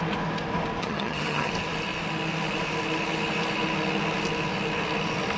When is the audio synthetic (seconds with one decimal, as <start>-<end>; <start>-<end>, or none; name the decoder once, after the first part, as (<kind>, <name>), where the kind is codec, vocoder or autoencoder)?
0.8-1.5 (vocoder, HiFi-GAN)